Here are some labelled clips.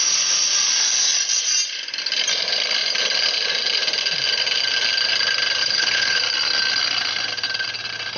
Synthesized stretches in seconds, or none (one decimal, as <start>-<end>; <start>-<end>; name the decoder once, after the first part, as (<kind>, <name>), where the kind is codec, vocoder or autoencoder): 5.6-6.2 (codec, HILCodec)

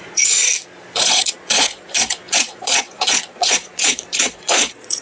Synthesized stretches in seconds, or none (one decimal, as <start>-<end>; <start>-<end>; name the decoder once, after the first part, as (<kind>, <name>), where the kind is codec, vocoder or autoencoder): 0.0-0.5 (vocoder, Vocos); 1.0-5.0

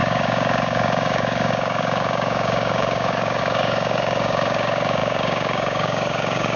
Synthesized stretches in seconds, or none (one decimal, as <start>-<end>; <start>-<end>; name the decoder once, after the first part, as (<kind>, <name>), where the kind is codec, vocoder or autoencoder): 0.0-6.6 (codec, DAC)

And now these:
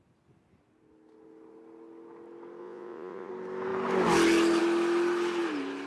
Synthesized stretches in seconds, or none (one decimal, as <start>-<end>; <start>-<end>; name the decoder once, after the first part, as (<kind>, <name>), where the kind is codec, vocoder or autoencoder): 2.6-3.3 (vocoder, Vocos)

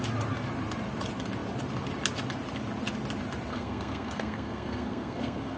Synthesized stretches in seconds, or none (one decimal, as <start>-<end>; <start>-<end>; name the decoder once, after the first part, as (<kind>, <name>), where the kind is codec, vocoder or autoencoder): 3.5-5.6 (codec, SNAC)

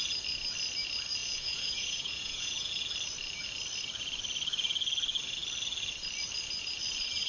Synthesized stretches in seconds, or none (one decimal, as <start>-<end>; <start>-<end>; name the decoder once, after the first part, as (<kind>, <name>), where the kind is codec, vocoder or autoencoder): 1.2-2.7 (vocoder, Vocos)

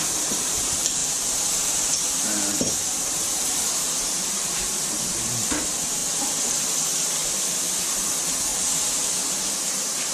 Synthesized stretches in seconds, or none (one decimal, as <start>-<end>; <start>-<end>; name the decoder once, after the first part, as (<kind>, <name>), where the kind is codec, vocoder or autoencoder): 0.0-1.0 (vocoder, BigVGAN v2); 1.5-6.0; 6.6-7.2; 7.9-8.5; 9.3-10.1

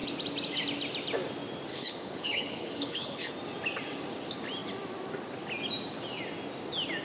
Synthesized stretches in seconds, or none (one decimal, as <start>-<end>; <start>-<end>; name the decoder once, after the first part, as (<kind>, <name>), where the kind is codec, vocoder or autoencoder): 1.7-3.3 (codec, HILCodec)